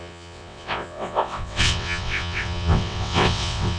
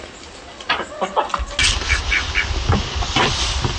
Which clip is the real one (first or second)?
second